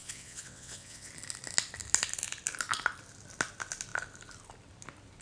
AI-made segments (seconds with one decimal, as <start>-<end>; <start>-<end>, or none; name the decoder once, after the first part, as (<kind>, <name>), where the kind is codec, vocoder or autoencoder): 0.0-1.1 (vocoder, WaveNeXt)